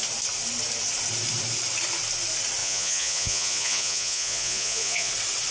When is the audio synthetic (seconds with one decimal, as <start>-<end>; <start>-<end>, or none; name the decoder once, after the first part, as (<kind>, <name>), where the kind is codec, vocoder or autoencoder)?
2.6-5.1 (vocoder, Vocos)